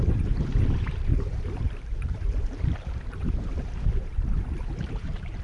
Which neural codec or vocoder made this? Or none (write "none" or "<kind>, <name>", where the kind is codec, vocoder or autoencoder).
vocoder, BigVGAN v2